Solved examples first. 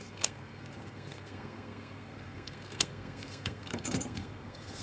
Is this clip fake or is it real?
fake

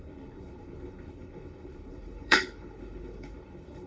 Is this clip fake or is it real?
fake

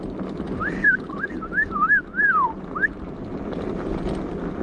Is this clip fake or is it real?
real